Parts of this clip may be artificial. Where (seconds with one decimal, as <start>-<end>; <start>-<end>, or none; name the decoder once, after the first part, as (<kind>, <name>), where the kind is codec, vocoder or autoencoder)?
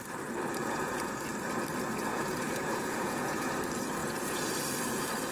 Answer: 0.6-1.2 (vocoder, Vocos); 2.1-3.5; 4.0-4.5